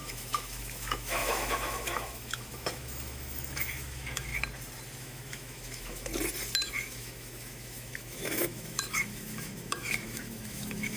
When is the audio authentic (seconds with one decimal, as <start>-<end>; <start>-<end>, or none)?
4.3-5.0; 6.1-6.7